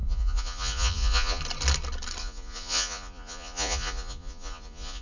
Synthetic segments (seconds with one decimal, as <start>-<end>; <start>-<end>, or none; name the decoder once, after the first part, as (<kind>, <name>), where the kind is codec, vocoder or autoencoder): 0.0-1.4 (vocoder, Vocos); 2.2-5.0